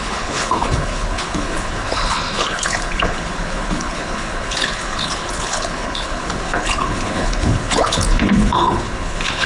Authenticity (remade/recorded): remade